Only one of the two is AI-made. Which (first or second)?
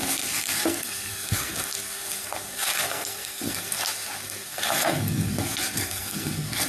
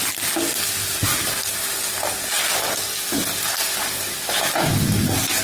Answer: first